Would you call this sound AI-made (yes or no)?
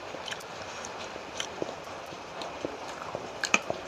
yes